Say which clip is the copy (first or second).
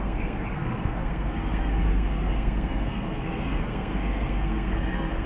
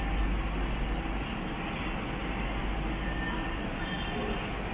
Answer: first